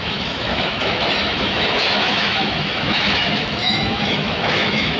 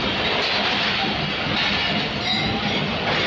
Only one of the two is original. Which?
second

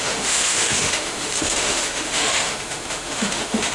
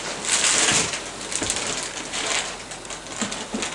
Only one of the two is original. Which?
second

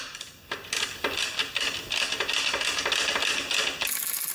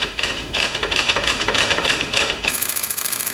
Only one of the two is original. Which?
first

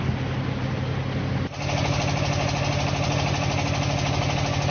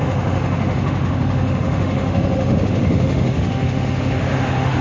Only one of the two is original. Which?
first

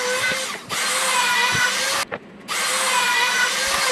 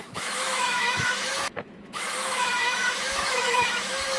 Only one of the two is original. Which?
first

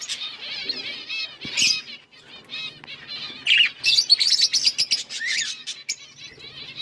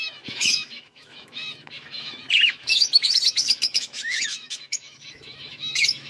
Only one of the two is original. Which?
first